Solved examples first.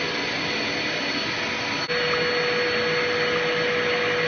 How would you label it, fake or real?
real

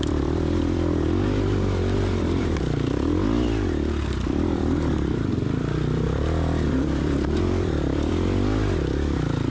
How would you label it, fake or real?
fake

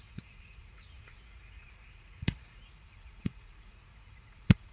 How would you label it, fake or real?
fake